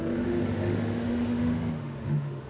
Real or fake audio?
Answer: fake